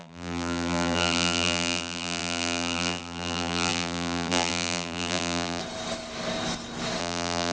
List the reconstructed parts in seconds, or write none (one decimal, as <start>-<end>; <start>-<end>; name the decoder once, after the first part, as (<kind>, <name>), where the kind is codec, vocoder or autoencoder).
0.0-5.6 (vocoder, BigVGAN v2); 7.0-7.5